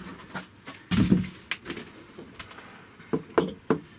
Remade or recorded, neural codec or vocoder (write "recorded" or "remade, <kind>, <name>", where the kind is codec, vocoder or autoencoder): recorded